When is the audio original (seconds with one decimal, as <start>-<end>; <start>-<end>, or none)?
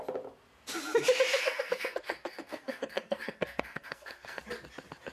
0.0-1.3; 4.4-5.1